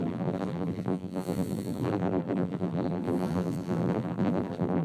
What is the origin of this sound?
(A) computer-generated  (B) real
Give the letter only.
A